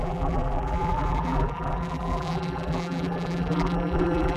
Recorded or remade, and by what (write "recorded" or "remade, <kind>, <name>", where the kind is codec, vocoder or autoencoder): remade, vocoder, BigVGAN v2